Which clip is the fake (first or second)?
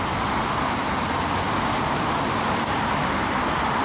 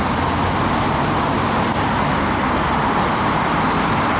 first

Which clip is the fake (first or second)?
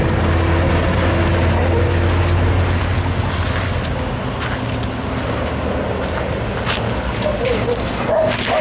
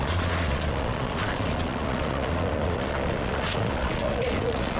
second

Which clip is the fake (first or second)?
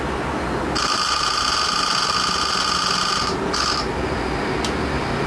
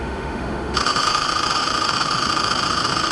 second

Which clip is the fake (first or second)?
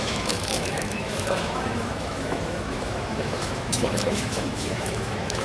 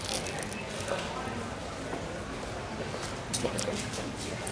first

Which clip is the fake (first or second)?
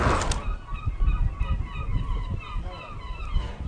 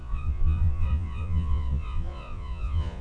second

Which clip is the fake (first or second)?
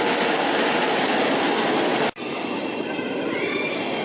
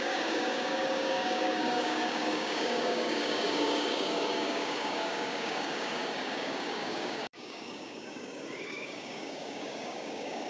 second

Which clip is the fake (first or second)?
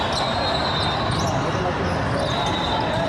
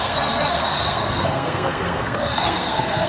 second